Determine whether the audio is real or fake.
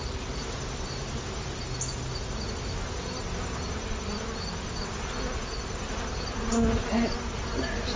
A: real